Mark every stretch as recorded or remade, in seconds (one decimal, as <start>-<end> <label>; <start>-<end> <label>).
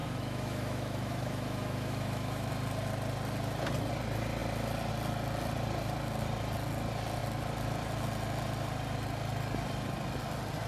0.0-2.5 remade; 2.5-10.7 recorded